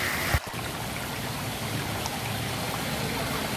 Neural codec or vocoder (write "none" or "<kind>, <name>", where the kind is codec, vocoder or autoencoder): none